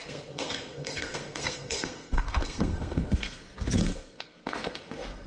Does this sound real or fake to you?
fake